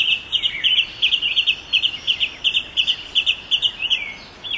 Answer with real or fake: real